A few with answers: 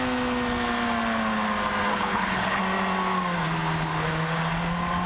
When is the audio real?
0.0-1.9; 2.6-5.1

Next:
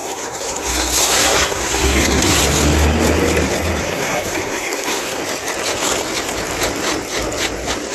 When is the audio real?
2.4-3.8; 5.2-7.9

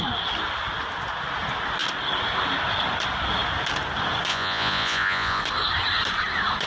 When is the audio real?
0.0-4.3; 5.4-6.7

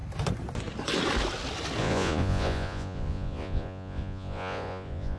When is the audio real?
0.0-1.8

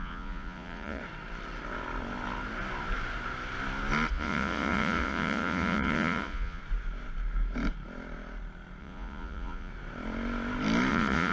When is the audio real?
1.0-4.1; 6.6-8.8; 9.7-10.9

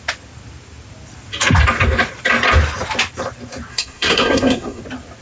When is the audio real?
0.0-3.7; 4.8-5.2

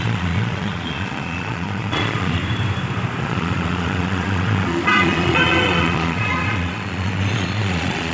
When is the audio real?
2.4-3.2